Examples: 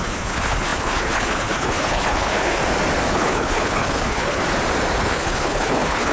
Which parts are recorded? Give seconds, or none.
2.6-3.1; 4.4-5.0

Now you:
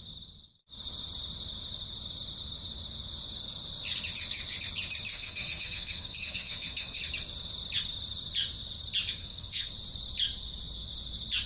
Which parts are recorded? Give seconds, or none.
0.0-5.1; 7.0-9.2; 9.7-11.5

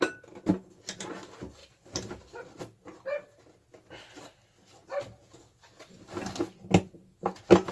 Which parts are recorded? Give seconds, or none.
0.0-1.6; 2.4-7.7

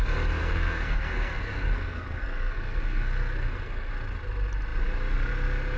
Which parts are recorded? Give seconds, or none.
0.0-0.4; 3.9-5.8